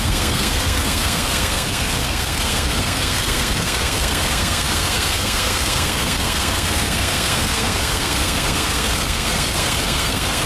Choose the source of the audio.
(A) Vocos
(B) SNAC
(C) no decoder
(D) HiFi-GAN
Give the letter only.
B